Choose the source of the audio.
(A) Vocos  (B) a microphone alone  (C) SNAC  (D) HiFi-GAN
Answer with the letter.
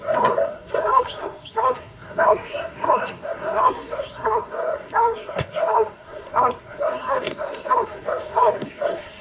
C